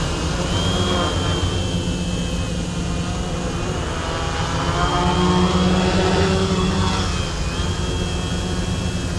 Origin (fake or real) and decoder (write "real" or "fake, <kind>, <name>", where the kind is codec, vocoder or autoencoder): real